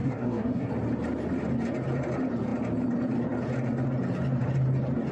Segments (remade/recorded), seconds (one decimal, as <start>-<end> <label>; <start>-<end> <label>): 0.0-0.7 remade; 0.7-5.1 recorded